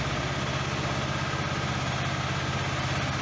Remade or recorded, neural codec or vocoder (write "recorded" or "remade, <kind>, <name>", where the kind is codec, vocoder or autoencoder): recorded